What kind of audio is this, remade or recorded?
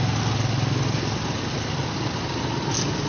recorded